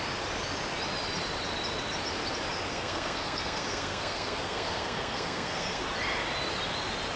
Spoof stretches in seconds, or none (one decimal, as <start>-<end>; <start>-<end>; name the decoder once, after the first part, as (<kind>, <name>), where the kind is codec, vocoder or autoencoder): 2.7-5.8 (codec, SNAC)

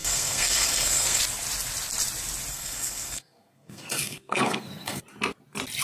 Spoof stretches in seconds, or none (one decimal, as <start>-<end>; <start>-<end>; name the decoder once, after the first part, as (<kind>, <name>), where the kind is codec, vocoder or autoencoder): 0.0-1.2 (codec, SNAC); 2.5-5.0

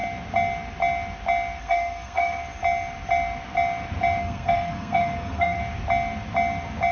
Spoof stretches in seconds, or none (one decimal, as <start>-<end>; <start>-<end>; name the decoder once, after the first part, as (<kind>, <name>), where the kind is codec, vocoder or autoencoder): 1.6-2.4 (codec, SNAC); 4.2-5.6